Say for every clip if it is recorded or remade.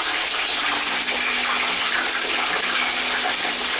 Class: recorded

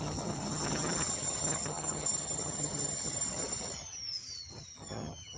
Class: remade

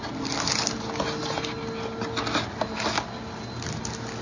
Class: recorded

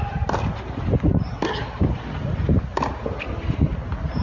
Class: recorded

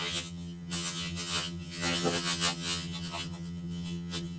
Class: remade